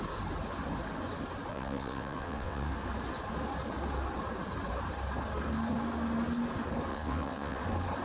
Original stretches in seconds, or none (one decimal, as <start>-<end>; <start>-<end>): 0.0-1.5; 2.7-6.9; 7.6-8.0